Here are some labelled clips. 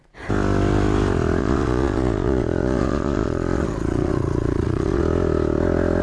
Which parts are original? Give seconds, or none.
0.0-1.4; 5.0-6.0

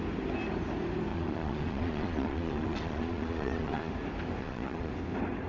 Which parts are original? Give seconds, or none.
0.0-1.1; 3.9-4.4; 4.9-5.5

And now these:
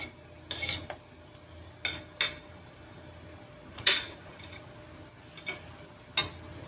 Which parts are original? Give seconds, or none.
0.0-3.7; 4.6-6.7

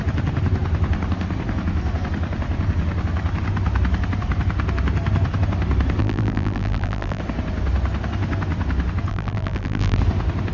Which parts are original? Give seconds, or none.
0.0-6.0; 7.2-9.1; 10.0-10.5

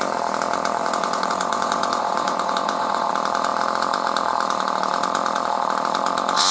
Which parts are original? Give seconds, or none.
0.0-0.8; 3.1-6.5

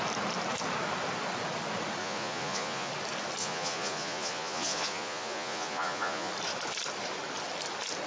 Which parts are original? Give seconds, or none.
0.0-2.0; 2.9-3.4; 6.3-8.1

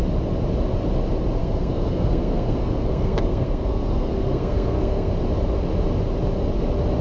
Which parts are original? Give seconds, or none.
0.0-1.4; 5.1-7.0